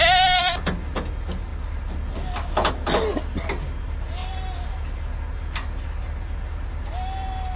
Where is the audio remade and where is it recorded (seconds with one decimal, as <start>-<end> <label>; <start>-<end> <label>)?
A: 0.0-7.6 recorded